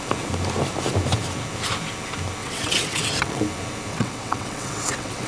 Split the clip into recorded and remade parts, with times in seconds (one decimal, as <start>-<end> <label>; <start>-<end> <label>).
0.0-2.4 recorded; 2.4-3.4 remade; 3.4-3.9 recorded; 3.9-5.3 remade